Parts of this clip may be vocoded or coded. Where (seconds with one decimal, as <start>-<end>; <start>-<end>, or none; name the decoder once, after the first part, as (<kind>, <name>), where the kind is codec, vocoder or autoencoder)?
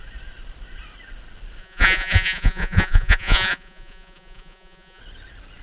1.6-5.0 (vocoder, Vocos)